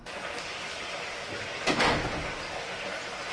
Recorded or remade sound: recorded